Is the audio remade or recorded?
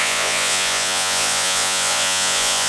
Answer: remade